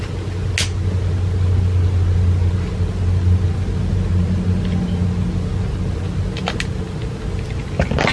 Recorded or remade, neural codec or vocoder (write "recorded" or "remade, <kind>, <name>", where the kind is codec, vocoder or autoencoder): recorded